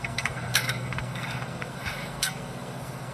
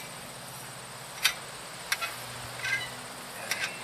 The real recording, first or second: second